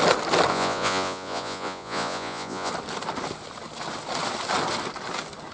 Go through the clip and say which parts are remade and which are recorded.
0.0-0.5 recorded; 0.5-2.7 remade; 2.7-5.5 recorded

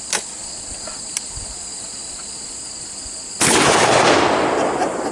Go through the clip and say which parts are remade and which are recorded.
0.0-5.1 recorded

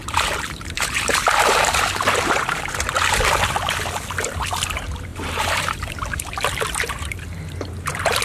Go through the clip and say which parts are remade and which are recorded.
0.0-2.7 remade; 2.7-5.1 recorded; 5.1-8.2 remade